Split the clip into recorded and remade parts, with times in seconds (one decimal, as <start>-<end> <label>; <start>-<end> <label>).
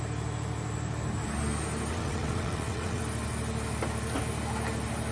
0.0-1.9 recorded; 1.9-3.0 remade; 3.0-5.1 recorded